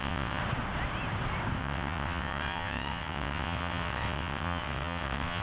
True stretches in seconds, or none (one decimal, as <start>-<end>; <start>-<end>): 0.4-1.6